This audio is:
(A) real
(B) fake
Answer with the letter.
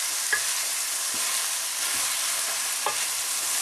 A